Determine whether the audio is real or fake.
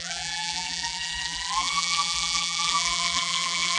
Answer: fake